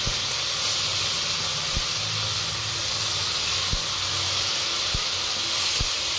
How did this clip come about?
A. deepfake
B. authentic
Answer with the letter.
B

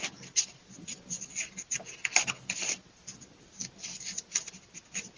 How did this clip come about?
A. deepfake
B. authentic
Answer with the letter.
B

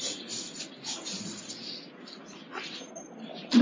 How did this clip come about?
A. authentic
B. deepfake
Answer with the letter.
A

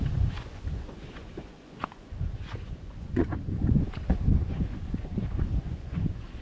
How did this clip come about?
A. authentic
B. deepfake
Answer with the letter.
B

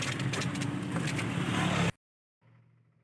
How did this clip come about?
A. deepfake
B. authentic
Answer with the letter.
B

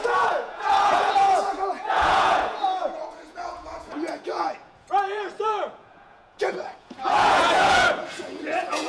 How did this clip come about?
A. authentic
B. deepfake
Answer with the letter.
B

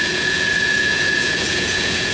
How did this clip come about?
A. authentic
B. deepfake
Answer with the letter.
B